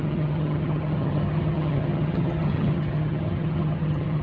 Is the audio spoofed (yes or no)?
yes